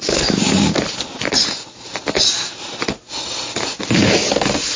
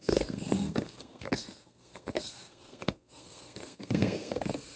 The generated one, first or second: second